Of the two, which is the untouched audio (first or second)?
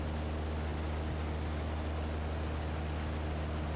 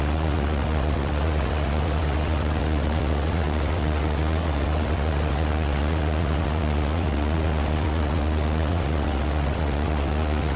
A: first